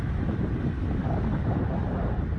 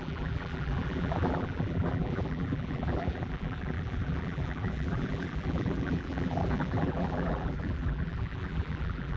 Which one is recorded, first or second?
first